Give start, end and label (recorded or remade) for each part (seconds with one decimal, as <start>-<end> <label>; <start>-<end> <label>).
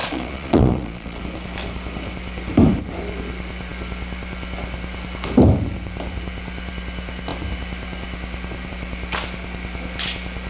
0.0-1.2 remade; 1.2-10.5 recorded